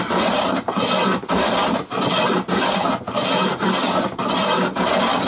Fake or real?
real